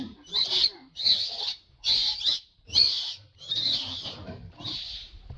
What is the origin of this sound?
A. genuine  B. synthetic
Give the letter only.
A